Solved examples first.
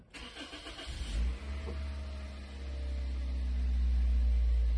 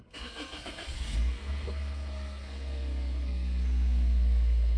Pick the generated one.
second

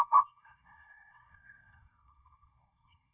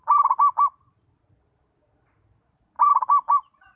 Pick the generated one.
first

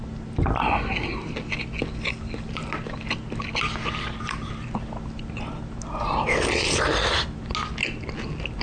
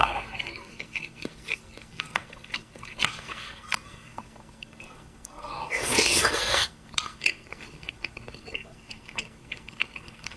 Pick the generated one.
second